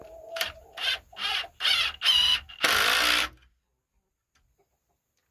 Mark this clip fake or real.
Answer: real